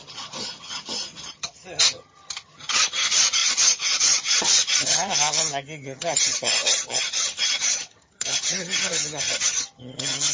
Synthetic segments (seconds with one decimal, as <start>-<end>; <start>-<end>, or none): 0.0-10.3